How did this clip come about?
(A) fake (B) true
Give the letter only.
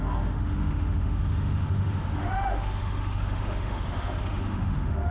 A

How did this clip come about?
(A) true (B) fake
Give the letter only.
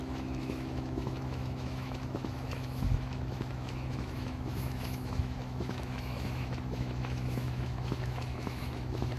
B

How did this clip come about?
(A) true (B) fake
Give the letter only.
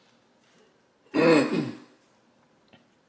A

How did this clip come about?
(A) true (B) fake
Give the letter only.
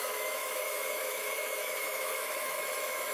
B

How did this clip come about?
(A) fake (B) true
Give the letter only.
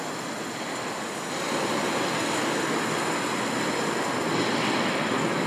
B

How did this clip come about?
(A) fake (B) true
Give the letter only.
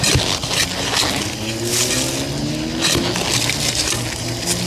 B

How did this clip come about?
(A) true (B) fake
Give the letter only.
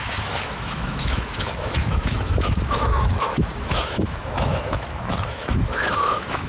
B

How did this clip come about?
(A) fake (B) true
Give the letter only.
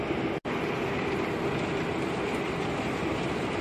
B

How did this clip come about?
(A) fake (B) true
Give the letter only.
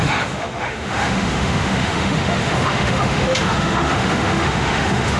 A